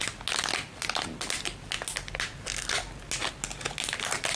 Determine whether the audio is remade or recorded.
recorded